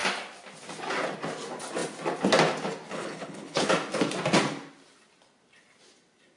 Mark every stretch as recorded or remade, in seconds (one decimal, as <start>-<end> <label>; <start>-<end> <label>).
0.0-2.9 recorded; 2.9-3.7 remade; 3.7-6.4 recorded